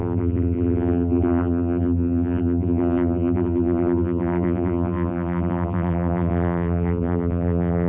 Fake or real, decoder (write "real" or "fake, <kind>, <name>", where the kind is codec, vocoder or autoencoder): fake, vocoder, BigVGAN v2